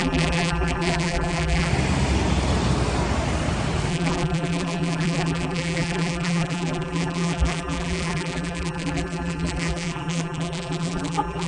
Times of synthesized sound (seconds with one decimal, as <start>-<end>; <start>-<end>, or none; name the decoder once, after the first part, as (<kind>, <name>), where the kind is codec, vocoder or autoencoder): 0.0-1.7 (vocoder, BigVGAN v2); 3.9-11.5